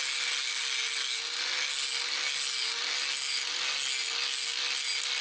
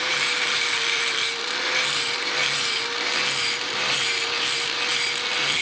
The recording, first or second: first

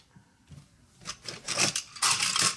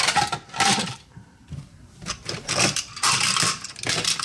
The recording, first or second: first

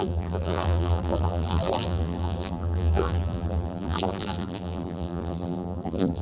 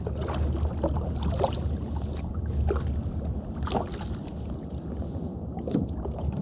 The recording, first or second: second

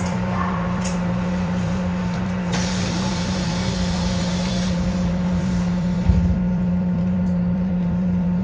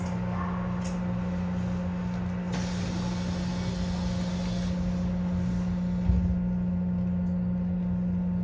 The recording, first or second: second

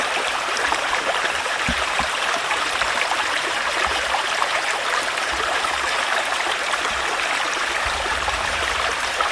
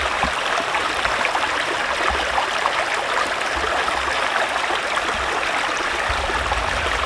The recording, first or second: second